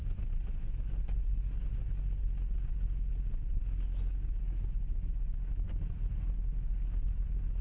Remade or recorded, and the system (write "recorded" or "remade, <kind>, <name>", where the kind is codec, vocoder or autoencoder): recorded